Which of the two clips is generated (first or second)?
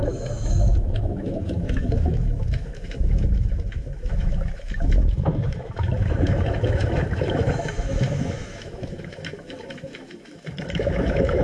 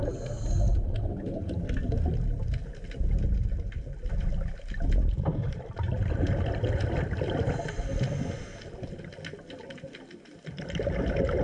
first